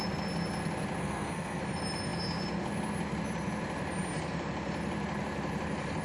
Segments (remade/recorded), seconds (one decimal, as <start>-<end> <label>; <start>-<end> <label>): 0.0-1.0 recorded; 1.0-1.6 remade; 1.6-6.0 recorded